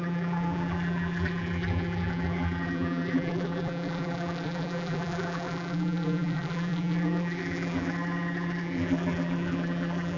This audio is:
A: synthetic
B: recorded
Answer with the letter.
A